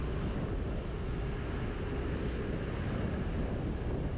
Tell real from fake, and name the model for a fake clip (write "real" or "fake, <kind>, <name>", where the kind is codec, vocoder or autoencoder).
real